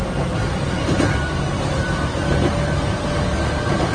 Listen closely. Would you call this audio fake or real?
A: real